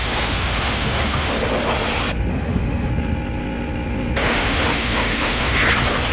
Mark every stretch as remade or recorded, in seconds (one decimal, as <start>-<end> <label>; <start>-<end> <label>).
0.0-1.3 remade; 1.3-2.3 recorded; 2.3-2.9 remade; 2.9-4.2 recorded; 4.2-5.6 remade; 5.6-6.1 recorded

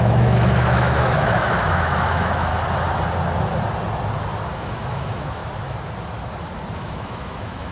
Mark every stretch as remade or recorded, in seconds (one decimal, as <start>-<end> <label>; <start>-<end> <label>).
0.0-2.5 remade; 2.5-4.6 recorded; 4.6-5.4 remade; 5.4-6.7 recorded; 6.7-7.7 remade

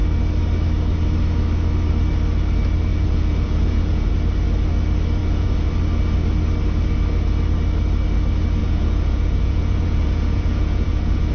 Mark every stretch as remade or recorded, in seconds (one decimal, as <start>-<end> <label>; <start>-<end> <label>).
0.0-2.9 recorded; 2.9-4.1 remade; 4.1-5.2 recorded; 5.2-5.7 remade; 5.7-8.6 recorded; 8.6-11.3 remade

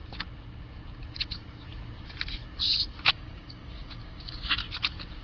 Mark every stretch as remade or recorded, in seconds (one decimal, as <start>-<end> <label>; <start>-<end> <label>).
0.0-3.1 recorded; 3.1-4.6 remade; 4.6-5.2 recorded

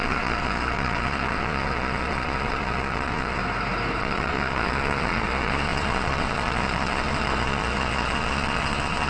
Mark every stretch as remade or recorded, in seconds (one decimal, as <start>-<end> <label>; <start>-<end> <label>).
0.0-3.4 remade; 3.4-4.0 recorded; 4.0-9.1 remade

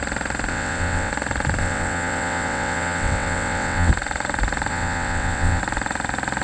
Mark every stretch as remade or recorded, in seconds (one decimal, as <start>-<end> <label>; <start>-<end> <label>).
0.0-0.5 recorded; 0.5-1.1 remade; 1.1-1.6 recorded; 1.6-3.9 remade; 3.9-4.7 recorded; 4.7-5.6 remade; 5.6-6.4 recorded

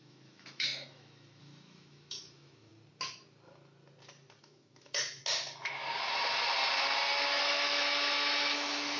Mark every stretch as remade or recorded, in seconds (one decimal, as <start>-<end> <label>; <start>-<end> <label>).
0.0-2.7 remade; 2.7-4.4 recorded; 4.4-5.2 remade; 5.2-7.4 recorded; 7.4-9.0 remade

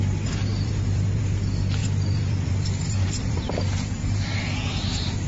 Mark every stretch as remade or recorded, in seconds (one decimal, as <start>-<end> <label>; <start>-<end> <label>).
0.0-0.5 recorded; 0.5-1.2 remade; 1.2-1.8 recorded; 1.8-3.5 remade; 3.5-5.3 recorded